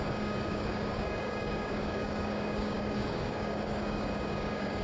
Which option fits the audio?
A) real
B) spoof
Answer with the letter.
B